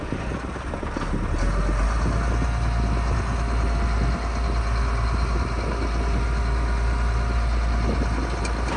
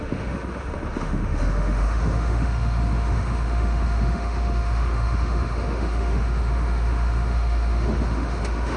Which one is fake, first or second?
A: second